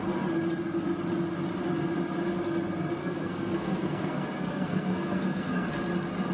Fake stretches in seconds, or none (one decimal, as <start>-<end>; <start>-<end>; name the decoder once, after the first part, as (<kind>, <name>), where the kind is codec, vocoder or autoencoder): 3.0-5.7 (codec, SNAC)